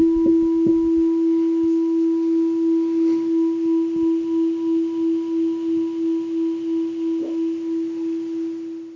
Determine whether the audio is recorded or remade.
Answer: recorded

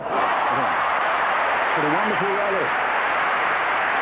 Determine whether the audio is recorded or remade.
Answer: remade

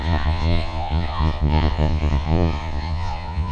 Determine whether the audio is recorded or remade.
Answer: remade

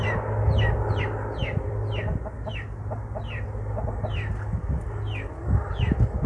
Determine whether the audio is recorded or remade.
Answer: recorded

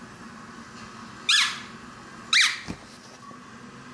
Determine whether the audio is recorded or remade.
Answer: recorded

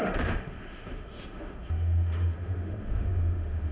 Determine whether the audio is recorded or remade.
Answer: remade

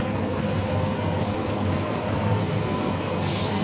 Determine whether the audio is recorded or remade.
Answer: remade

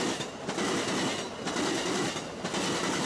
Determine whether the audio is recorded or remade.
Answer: recorded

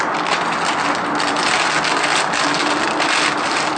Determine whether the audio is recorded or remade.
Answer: recorded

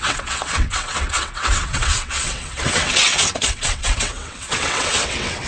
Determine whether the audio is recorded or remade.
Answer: remade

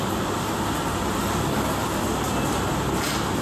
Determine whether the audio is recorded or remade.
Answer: recorded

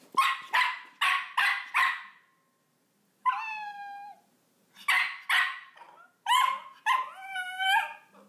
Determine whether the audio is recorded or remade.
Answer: recorded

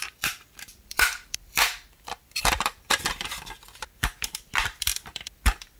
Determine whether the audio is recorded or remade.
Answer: remade